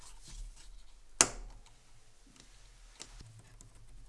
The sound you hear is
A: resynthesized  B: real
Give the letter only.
B